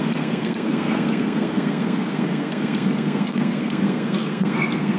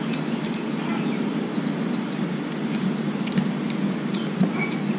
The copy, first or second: first